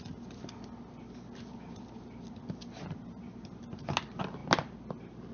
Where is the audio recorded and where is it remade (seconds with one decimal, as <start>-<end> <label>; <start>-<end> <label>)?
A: 0.0-5.3 recorded